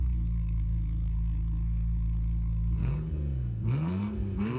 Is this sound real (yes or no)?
no